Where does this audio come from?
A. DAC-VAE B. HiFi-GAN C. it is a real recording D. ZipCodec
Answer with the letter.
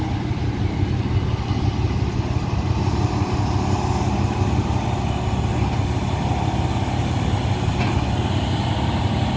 C